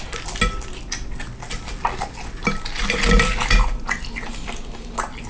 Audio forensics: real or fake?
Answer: real